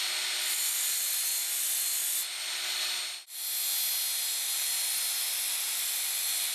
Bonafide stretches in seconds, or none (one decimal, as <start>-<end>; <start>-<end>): 0.0-6.5

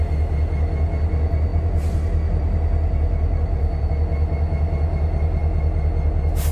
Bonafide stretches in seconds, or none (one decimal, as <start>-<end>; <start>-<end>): 0.0-1.5; 3.9-6.5

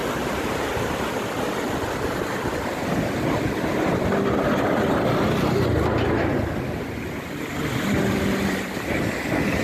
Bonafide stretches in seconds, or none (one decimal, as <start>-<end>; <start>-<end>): 0.9-9.6

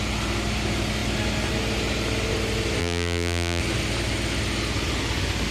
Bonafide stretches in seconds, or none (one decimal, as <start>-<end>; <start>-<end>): 0.0-2.8; 3.6-5.5